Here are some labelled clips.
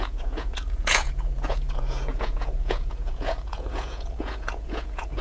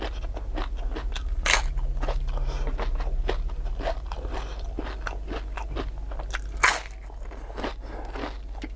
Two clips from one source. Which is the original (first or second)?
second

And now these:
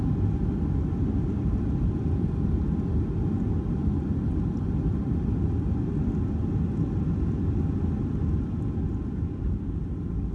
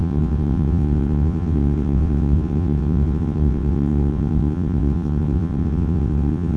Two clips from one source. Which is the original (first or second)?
first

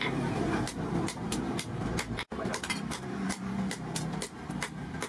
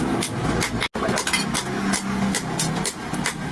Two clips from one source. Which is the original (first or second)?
second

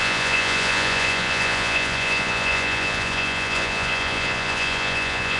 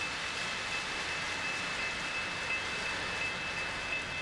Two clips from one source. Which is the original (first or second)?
second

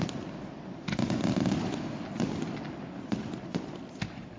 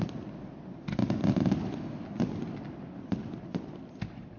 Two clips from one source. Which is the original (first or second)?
second